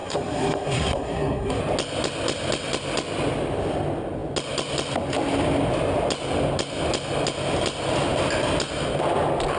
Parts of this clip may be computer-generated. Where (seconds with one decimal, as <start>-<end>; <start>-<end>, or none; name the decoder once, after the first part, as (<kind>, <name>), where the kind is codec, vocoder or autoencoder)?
0.0-1.6 (codec, SNAC)